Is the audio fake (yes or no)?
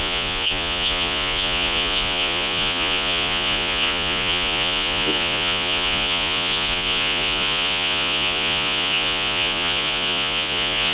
yes